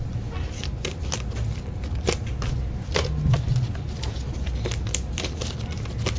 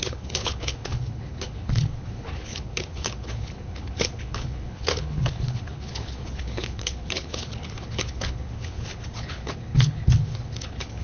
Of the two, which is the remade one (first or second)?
second